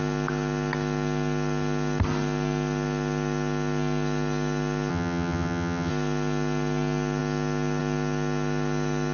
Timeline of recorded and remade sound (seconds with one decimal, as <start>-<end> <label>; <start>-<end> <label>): 0.0-4.9 recorded; 4.9-5.9 remade; 5.9-9.1 recorded